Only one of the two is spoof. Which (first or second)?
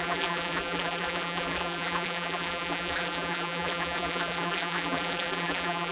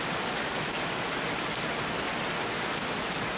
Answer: first